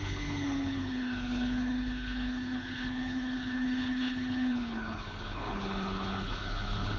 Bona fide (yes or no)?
no